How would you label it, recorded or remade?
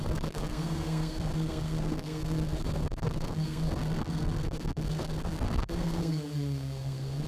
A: remade